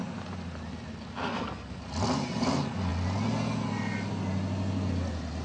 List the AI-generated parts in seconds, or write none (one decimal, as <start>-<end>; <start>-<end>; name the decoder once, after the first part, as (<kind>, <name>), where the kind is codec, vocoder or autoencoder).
1.3-1.8 (codec, SNAC)